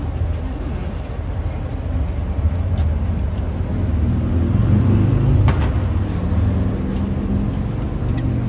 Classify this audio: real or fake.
real